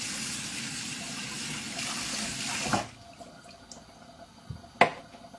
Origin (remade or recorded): recorded